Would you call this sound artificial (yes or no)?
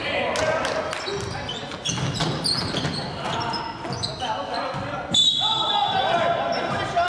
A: no